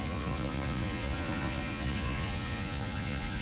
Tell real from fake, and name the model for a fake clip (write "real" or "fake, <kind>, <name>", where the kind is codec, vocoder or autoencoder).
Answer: fake, vocoder, Vocos